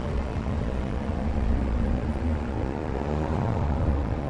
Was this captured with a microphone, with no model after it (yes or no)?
no